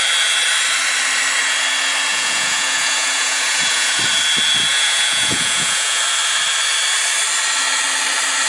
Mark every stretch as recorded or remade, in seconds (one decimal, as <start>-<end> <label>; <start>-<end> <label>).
0.0-2.1 recorded; 2.1-4.0 remade; 4.0-4.7 recorded; 4.7-6.0 remade; 6.0-8.5 recorded